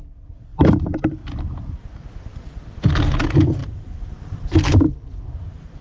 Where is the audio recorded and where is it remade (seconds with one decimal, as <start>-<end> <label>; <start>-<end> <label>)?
0.0-0.5 recorded; 0.5-2.8 remade; 2.8-3.6 recorded; 3.6-5.8 remade